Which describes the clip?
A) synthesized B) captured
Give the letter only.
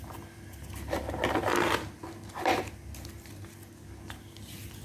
B